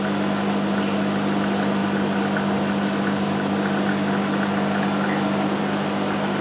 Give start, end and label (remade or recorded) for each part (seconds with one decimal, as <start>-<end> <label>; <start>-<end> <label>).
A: 0.0-6.4 recorded

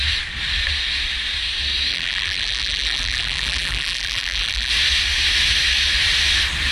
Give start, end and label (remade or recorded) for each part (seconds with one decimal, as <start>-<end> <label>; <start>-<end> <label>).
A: 0.0-1.9 recorded; 1.9-4.7 remade; 4.7-6.7 recorded